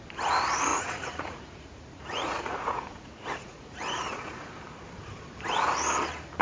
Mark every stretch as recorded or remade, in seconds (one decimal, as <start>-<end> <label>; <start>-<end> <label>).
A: 0.0-0.7 recorded; 0.7-4.5 remade; 4.5-6.4 recorded